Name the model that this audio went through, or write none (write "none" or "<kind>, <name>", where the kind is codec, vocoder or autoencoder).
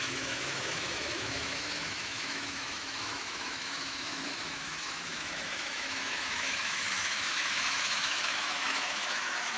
autoencoder, DAC-VAE